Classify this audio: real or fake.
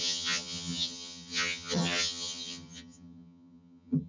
fake